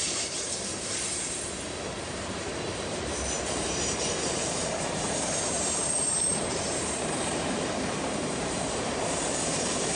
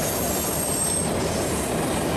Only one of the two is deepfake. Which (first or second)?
first